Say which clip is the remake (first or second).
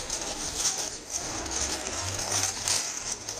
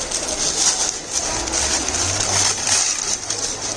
first